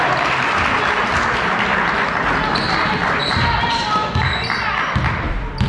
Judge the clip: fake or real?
real